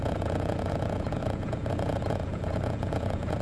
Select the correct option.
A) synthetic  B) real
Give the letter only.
A